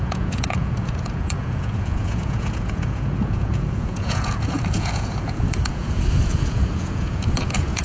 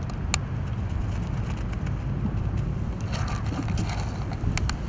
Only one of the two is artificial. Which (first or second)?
first